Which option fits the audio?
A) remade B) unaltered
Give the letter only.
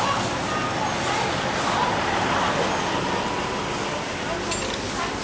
B